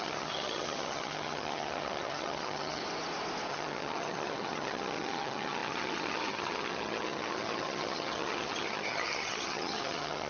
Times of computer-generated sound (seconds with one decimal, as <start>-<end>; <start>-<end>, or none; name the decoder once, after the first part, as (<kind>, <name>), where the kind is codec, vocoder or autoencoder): 0.0-2.8 (vocoder, HiFi-GAN); 3.5-10.3